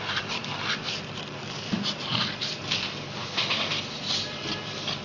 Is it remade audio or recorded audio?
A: remade